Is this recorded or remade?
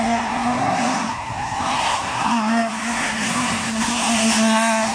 remade